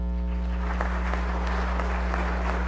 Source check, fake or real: real